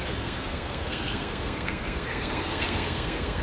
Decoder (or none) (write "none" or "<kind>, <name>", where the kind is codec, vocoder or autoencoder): codec, SNAC